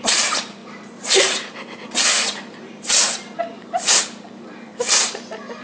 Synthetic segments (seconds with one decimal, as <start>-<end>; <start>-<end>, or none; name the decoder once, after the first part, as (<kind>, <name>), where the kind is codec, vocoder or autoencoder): none